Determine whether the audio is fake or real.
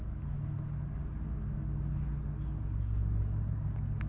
real